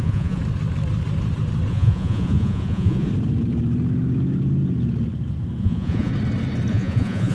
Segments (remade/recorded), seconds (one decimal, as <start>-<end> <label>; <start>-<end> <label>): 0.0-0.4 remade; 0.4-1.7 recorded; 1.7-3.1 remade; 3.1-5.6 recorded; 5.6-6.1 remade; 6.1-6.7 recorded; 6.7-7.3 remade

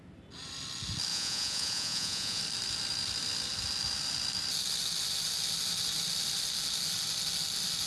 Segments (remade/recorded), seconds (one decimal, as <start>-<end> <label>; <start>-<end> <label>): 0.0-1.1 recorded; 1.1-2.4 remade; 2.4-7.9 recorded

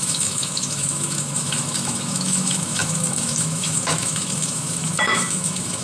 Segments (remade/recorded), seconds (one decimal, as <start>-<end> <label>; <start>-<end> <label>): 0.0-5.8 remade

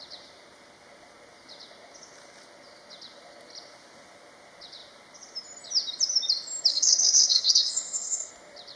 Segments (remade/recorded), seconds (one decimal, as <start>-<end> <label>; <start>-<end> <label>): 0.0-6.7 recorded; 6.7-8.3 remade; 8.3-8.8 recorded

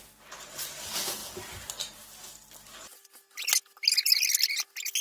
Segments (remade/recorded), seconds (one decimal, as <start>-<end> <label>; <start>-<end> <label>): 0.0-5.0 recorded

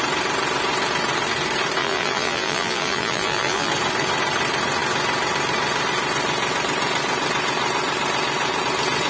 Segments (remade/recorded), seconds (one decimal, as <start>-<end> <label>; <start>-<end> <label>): 0.0-1.8 recorded; 1.8-3.7 remade; 3.7-9.1 recorded

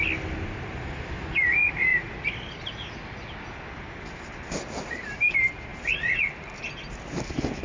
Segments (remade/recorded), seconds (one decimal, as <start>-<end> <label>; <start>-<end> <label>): 0.0-7.6 recorded

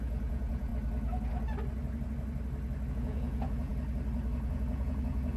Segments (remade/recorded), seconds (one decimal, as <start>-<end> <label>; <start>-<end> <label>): 0.0-0.7 remade; 0.7-2.9 recorded; 2.9-3.7 remade; 3.7-4.5 recorded; 4.5-5.4 remade